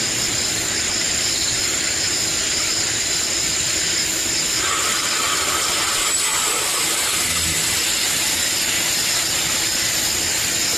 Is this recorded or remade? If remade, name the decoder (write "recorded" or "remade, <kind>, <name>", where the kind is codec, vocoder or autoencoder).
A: recorded